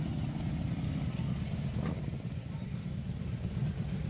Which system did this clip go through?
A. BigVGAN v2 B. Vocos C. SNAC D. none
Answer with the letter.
A